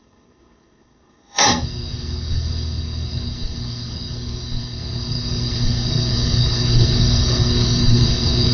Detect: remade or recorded remade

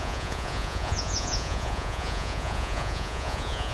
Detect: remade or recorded remade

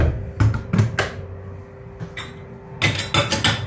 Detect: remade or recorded recorded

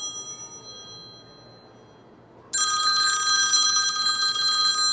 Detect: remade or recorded recorded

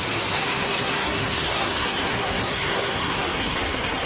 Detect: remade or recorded remade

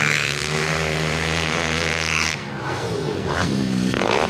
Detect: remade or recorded remade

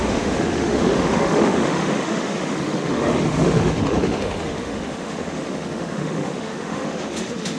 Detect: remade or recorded remade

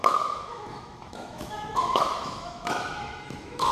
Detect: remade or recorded remade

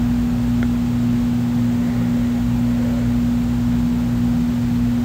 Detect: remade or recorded recorded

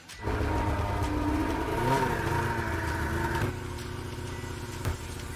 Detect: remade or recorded recorded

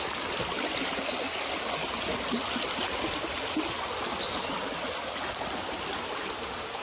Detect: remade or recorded recorded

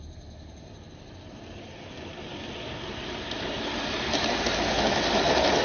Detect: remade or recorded recorded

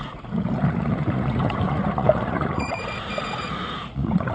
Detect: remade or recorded remade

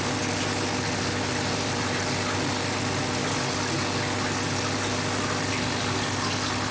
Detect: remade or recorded recorded